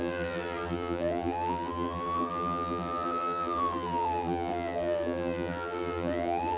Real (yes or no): no